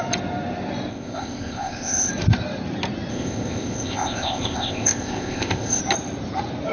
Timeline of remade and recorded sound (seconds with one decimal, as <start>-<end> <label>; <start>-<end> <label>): 0.0-0.9 recorded; 0.9-2.1 remade; 2.1-3.1 recorded; 3.1-5.8 remade; 5.8-6.7 recorded